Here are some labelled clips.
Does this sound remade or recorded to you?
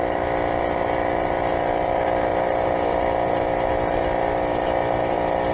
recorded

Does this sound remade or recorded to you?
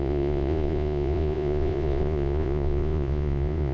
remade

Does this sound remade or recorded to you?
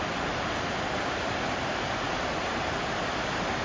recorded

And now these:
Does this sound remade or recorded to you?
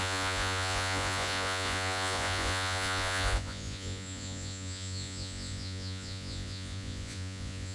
remade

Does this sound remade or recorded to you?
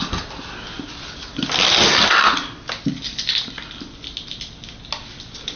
recorded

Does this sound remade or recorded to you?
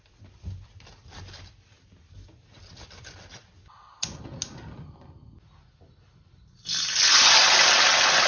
recorded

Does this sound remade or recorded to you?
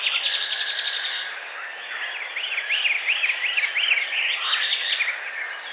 recorded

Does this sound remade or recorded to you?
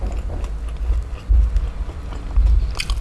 recorded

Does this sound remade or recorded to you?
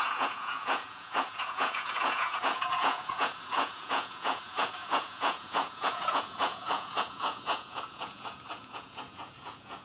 remade